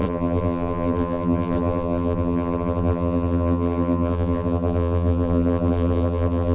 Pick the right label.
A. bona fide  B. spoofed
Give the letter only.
B